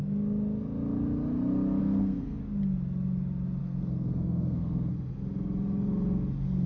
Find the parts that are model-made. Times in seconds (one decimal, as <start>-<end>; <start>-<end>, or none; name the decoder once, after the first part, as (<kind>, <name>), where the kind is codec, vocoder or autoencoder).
1.8-2.4 (codec, SNAC); 3.6-4.9